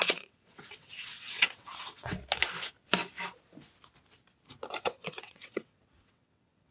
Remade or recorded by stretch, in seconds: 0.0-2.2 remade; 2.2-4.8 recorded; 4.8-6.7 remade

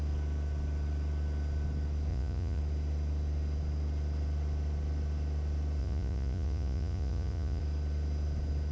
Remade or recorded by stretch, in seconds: 0.0-2.1 recorded; 2.1-2.6 remade; 2.6-5.8 recorded; 5.8-7.6 remade; 7.6-8.7 recorded

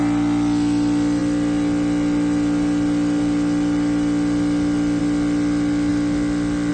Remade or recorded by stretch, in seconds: 0.0-6.7 recorded

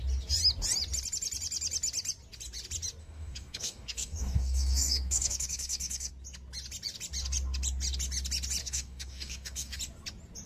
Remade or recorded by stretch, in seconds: 0.0-3.0 recorded; 3.0-6.1 remade; 6.1-8.6 recorded; 8.6-9.8 remade; 9.8-10.5 recorded

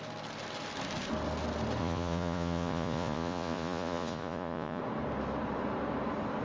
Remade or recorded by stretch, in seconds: 0.0-1.8 recorded; 1.8-4.8 remade; 4.8-6.4 recorded

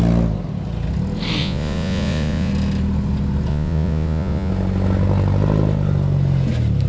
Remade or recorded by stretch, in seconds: 0.0-1.4 recorded; 1.4-2.5 remade; 2.5-3.5 recorded; 3.5-4.5 remade; 4.5-6.9 recorded